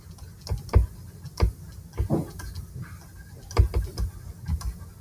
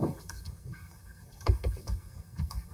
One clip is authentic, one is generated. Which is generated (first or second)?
second